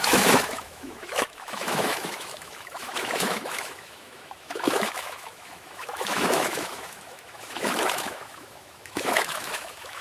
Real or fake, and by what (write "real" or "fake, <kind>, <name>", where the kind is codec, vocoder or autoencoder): fake, autoencoder, DAC-VAE